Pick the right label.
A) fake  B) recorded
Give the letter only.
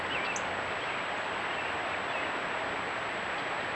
B